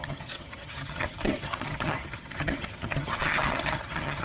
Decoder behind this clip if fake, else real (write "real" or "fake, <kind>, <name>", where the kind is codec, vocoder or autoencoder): fake, vocoder, HiFi-GAN